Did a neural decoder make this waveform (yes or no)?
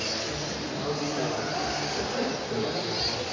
no